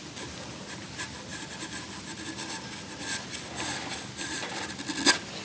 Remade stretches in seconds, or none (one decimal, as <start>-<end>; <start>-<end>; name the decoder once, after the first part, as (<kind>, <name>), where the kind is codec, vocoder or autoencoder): none